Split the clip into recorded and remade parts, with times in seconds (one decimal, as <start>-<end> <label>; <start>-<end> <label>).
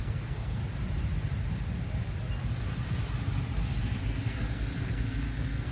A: 0.0-0.6 remade; 0.6-4.0 recorded; 4.0-5.7 remade